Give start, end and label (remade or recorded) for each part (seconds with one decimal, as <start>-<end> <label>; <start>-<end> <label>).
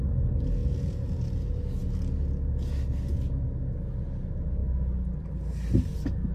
0.0-6.3 recorded